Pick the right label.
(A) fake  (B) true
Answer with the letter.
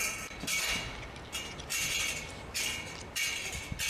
B